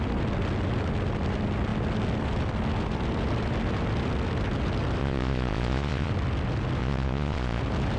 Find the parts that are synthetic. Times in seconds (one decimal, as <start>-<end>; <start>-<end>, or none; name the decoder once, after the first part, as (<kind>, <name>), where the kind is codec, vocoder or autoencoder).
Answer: 5.0-6.1 (vocoder, Vocos); 6.8-7.6